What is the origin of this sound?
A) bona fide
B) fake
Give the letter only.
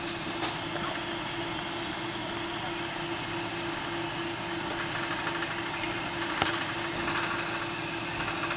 A